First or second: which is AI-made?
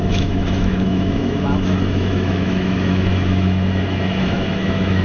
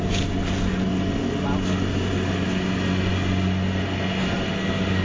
first